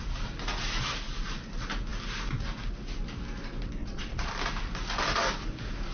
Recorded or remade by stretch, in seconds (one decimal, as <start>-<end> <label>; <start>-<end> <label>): 0.0-3.8 recorded; 3.8-4.3 remade; 4.3-5.9 recorded